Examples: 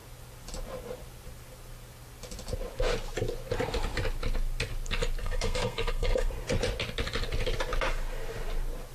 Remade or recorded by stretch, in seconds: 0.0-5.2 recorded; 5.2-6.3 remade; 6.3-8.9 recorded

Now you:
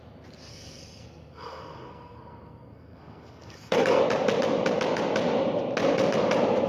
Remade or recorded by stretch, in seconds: 0.0-0.5 recorded; 0.5-4.0 remade; 4.0-6.7 recorded

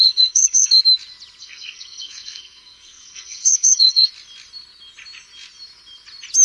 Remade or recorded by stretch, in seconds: 0.0-0.8 remade; 0.8-1.4 recorded; 1.4-4.1 remade; 4.1-6.4 recorded

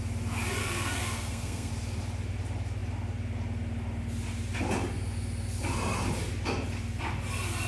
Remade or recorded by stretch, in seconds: 0.0-0.6 recorded; 0.6-1.7 remade; 1.7-7.7 recorded

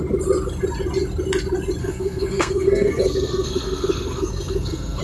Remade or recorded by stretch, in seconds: 0.0-1.8 recorded; 1.8-5.0 remade